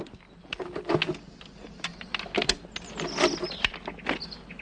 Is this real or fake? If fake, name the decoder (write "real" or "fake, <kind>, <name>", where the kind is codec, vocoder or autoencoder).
real